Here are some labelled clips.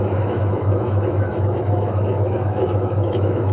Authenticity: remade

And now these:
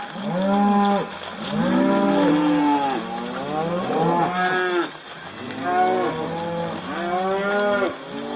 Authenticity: recorded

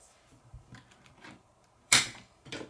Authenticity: remade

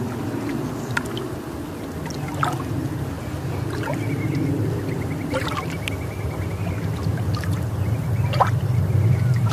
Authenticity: recorded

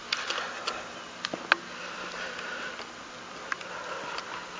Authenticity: recorded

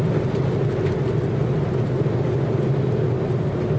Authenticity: recorded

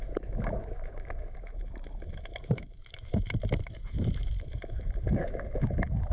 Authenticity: remade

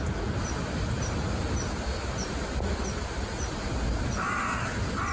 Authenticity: recorded